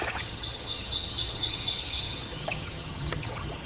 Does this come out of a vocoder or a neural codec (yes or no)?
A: yes